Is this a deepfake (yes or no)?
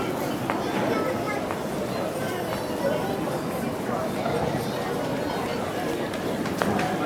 no